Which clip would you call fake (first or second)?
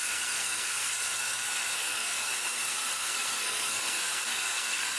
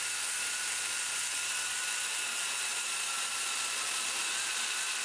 first